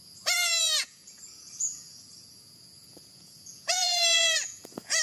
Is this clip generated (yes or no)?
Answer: yes